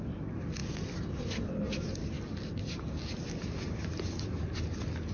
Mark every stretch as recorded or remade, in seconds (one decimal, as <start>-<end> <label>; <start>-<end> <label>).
0.0-5.1 recorded